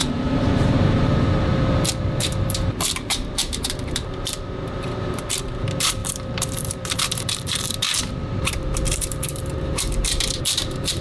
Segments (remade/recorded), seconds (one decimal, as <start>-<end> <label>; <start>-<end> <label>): 0.0-11.0 remade